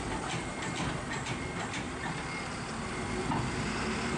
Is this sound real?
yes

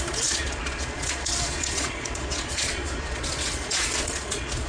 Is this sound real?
no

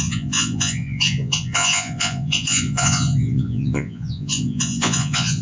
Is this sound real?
no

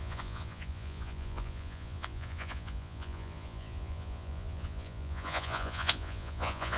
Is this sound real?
no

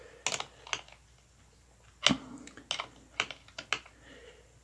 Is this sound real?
yes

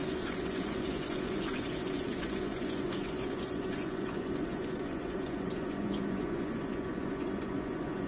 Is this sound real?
no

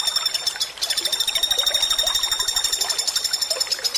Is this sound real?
yes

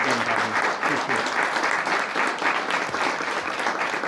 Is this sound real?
yes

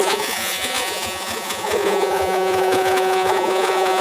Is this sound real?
no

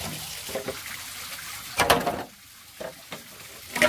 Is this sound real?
yes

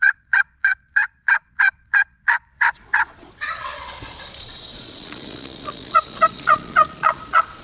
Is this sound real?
no